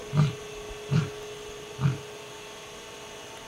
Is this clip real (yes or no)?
yes